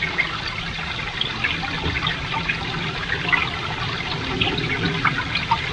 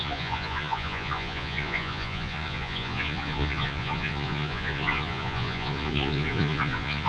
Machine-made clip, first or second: second